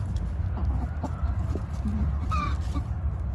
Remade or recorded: remade